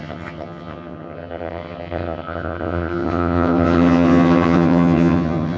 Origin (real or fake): fake